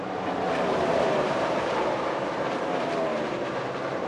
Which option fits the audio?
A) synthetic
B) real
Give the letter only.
A